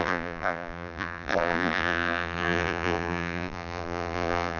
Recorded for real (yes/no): no